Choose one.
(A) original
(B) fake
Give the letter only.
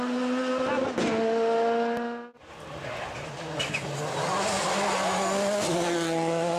A